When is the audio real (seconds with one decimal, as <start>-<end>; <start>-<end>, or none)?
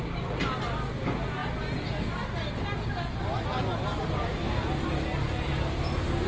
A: 0.0-6.3